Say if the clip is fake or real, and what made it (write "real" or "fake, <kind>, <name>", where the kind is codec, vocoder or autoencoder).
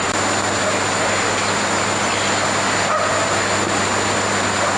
real